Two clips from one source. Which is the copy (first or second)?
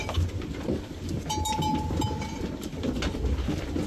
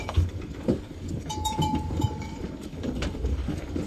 second